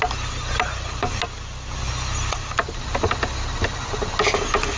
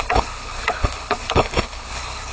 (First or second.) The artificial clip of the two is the second